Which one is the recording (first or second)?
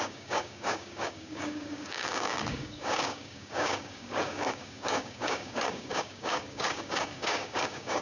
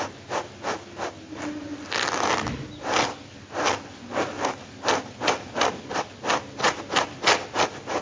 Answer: second